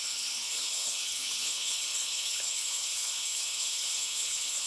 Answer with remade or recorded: remade